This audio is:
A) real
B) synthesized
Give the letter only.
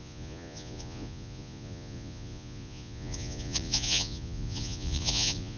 B